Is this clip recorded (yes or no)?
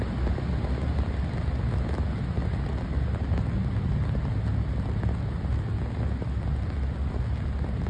yes